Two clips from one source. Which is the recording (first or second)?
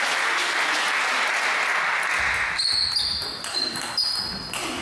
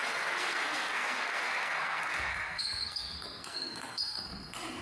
first